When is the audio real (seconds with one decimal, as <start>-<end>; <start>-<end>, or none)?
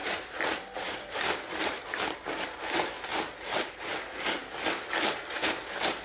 3.6-6.0